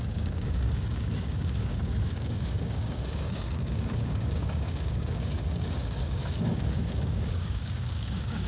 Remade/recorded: remade